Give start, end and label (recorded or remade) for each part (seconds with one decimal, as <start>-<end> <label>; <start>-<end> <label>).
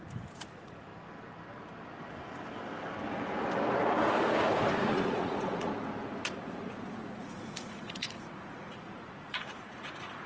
0.0-0.9 remade; 0.9-4.9 recorded; 4.9-5.7 remade; 5.7-6.3 recorded; 6.3-10.3 remade